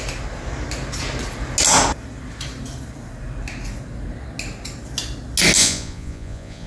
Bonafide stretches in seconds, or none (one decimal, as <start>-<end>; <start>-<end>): 0.0-5.6